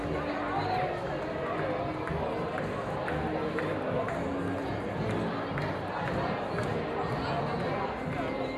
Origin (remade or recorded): recorded